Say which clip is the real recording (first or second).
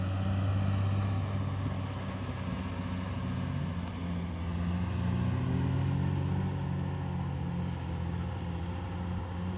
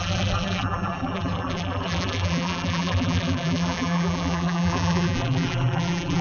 first